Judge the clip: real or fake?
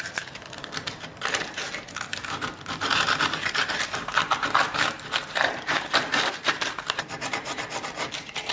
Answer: fake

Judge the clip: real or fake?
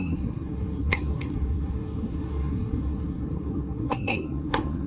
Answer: fake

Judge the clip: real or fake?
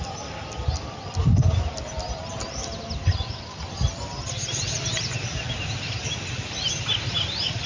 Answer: real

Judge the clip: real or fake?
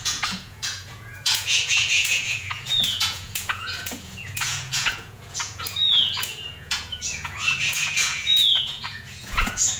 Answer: fake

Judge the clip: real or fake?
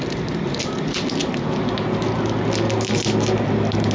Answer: real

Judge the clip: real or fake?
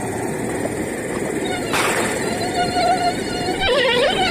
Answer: fake